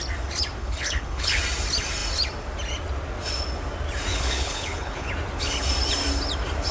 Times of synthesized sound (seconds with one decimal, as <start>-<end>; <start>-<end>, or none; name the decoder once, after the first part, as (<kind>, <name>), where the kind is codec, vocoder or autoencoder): 0.6-1.4 (codec, HILCodec); 4.1-5.1